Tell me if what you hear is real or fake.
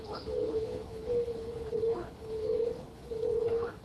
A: fake